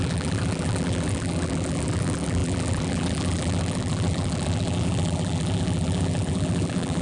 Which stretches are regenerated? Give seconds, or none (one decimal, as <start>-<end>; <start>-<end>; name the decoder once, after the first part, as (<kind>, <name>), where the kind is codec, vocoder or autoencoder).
0.0-7.0 (vocoder, BigVGAN v2)